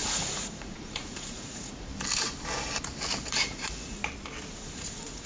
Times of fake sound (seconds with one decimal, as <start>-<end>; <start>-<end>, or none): 0.0-1.9; 3.3-4.0; 4.5-5.3

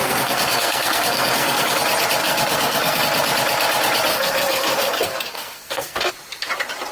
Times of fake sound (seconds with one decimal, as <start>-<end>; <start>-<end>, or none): 0.0-1.8; 2.2-3.0; 4.1-6.1

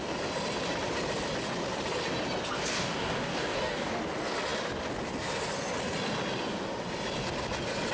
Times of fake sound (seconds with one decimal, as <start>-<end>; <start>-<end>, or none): 2.7-3.9